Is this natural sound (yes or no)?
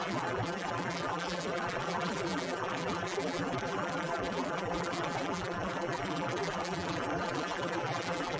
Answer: no